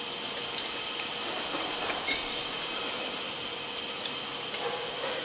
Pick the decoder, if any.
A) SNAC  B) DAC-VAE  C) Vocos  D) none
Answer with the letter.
D